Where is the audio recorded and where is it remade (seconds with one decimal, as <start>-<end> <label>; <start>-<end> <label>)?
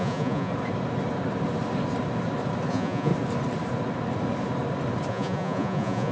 0.0-0.5 remade; 0.5-2.7 recorded; 2.7-3.1 remade; 3.1-5.1 recorded; 5.1-6.1 remade